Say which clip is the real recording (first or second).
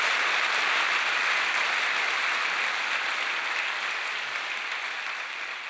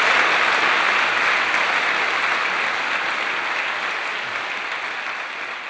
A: second